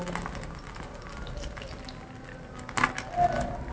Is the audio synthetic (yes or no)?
no